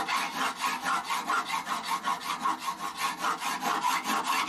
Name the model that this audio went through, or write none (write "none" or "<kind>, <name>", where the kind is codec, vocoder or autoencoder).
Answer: none